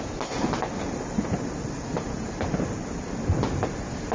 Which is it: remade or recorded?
recorded